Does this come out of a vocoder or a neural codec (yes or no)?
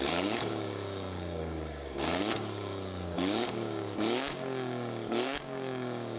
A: yes